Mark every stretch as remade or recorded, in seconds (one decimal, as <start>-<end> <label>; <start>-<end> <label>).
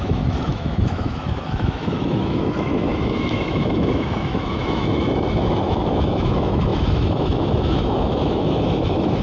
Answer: 0.0-9.2 remade